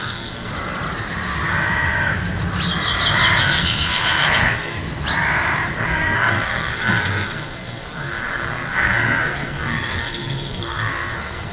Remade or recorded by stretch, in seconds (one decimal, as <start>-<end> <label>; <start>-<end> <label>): 0.0-0.5 remade; 0.5-3.4 recorded; 3.4-4.8 remade; 4.8-5.8 recorded; 5.8-11.5 remade